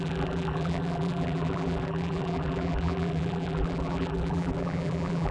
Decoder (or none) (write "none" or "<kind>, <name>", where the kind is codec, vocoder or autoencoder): vocoder, BigVGAN v2